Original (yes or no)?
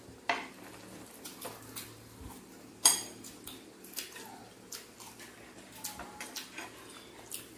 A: no